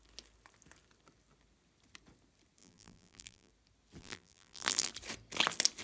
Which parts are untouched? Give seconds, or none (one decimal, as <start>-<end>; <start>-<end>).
0.0-2.6; 3.5-4.0; 4.9-5.8